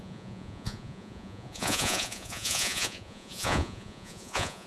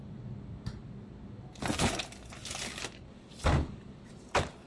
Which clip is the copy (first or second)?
first